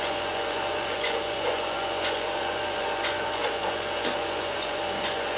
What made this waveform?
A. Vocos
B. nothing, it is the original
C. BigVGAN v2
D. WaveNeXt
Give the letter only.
A